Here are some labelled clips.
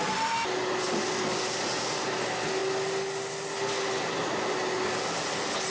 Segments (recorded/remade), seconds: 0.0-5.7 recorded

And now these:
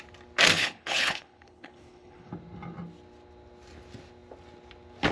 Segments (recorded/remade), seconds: 0.0-0.5 recorded; 0.5-2.3 remade; 2.3-5.1 recorded

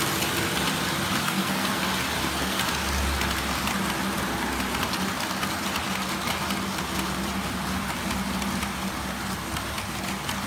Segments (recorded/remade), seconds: 0.0-1.2 recorded; 1.2-1.8 remade; 1.8-2.2 recorded; 2.2-2.7 remade; 2.7-10.5 recorded

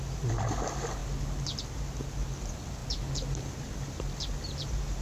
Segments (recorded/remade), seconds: 0.0-5.0 recorded